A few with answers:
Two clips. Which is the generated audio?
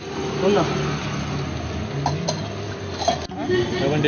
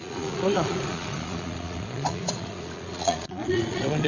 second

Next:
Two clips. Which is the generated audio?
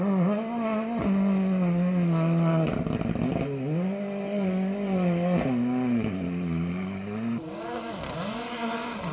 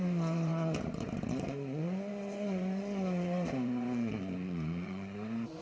second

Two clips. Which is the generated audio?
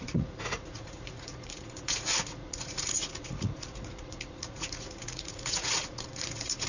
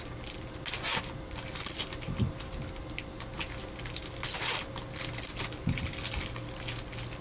first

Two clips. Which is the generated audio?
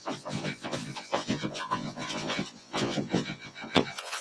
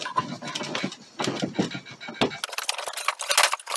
first